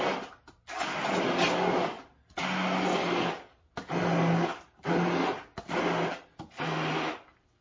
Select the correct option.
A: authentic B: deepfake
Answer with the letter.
A